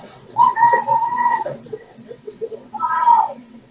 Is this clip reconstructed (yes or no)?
yes